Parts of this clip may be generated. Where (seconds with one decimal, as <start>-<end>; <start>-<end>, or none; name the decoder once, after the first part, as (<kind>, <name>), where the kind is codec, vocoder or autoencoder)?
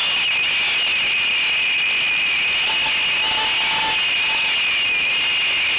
none